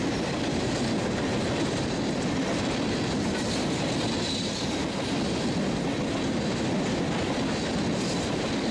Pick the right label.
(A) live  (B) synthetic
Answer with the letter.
A